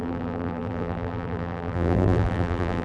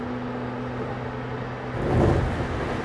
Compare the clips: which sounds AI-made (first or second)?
first